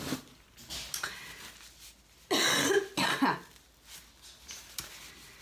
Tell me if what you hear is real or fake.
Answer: real